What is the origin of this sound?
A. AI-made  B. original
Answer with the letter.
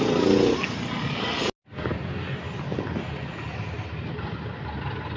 B